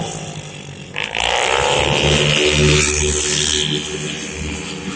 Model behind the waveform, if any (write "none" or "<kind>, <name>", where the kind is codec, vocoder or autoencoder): none